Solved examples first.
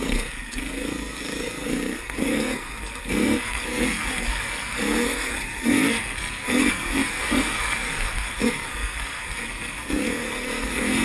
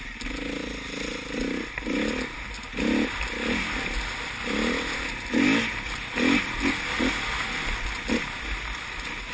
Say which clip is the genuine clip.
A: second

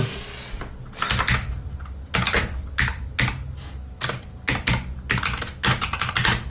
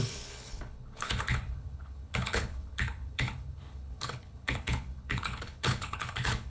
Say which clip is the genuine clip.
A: first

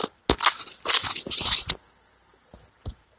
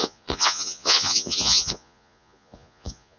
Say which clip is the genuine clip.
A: first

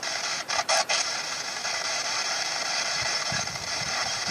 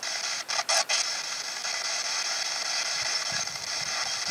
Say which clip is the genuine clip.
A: second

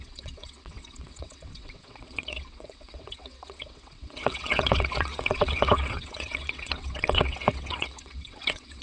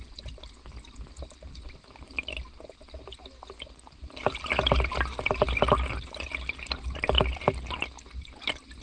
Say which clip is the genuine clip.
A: second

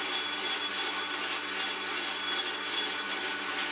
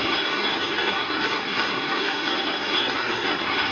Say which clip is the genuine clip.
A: first